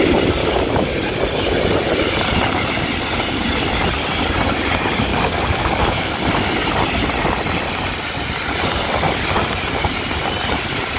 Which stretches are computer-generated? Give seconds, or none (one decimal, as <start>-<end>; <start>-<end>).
0.4-0.9; 5.1-6.1